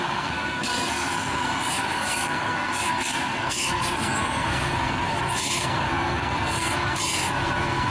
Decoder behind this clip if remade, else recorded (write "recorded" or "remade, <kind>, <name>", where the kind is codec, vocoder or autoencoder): remade, codec, SNAC